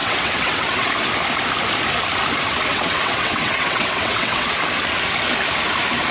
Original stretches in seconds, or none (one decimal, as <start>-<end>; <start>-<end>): 0.9-2.7; 4.5-6.1

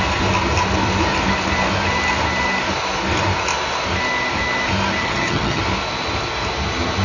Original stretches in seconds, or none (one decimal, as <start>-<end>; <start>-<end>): 0.0-5.0; 5.6-7.0

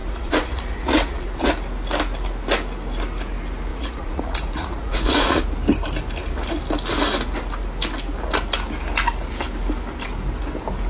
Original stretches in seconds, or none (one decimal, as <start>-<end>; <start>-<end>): 1.5-3.7; 5.4-10.9

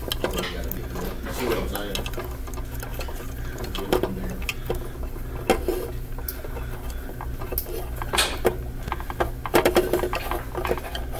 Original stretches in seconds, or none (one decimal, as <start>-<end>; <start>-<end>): 0.0-2.9; 4.7-11.2

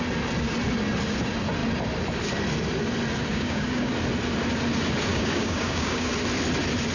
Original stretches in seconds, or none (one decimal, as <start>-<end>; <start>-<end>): 0.0-3.3; 3.9-5.1; 6.1-6.9